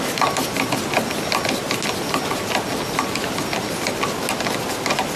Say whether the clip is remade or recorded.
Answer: recorded